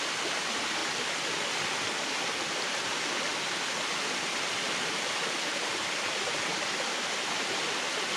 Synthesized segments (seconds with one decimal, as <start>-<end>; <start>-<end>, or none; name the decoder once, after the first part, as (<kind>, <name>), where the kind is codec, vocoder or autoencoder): none